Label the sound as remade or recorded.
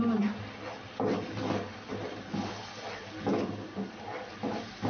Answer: recorded